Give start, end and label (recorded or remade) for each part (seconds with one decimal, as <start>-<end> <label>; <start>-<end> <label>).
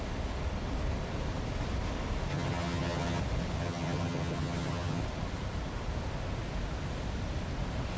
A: 0.0-2.3 recorded; 2.3-3.2 remade; 3.2-3.6 recorded; 3.6-5.0 remade; 5.0-8.0 recorded